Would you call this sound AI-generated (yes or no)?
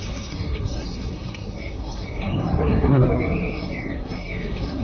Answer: yes